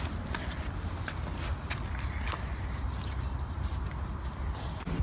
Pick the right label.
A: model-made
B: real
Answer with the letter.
B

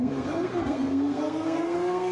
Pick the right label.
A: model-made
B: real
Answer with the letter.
A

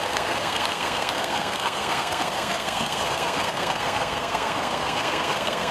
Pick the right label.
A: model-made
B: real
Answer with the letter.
A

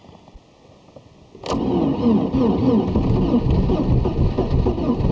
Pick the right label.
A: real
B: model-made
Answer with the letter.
A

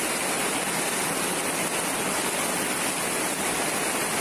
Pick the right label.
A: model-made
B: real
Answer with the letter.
B